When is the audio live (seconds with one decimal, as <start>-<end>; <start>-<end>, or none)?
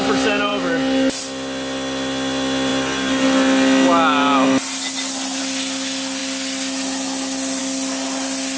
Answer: 0.0-8.6